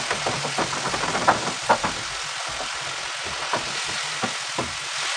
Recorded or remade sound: recorded